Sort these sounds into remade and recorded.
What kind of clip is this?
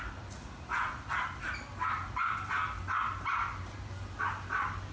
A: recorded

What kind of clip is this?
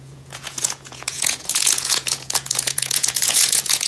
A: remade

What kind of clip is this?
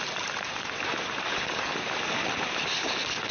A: recorded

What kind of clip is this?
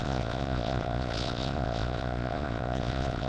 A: remade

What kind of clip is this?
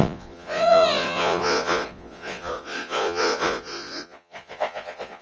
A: remade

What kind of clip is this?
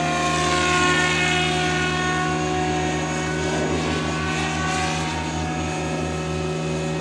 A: recorded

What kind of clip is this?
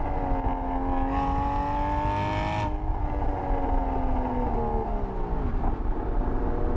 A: recorded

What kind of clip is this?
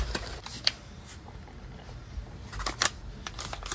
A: recorded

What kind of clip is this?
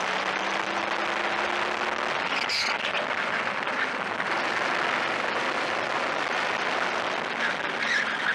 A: recorded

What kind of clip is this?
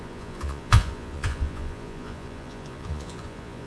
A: remade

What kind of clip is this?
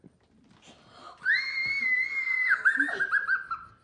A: recorded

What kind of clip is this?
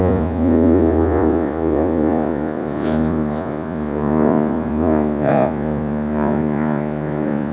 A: remade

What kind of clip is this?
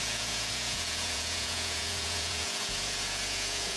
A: remade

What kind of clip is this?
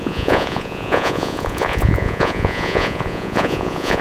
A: remade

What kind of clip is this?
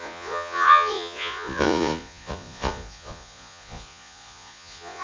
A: remade